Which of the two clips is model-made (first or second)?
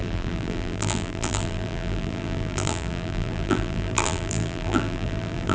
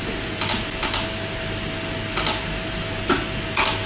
first